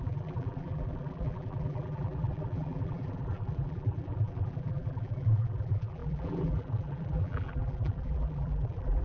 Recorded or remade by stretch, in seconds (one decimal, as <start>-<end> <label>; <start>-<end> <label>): 0.0-9.0 remade